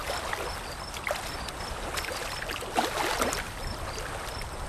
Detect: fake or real real